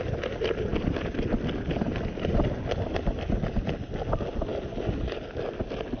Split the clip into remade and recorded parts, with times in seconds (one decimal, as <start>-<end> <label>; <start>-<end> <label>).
0.0-6.0 recorded